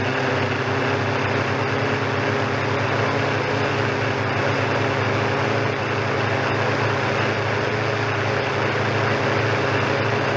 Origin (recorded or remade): recorded